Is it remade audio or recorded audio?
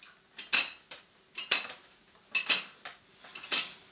recorded